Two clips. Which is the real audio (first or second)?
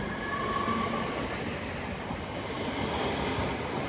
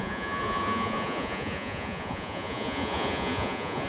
first